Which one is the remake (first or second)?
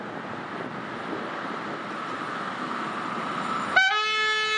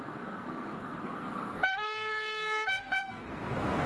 second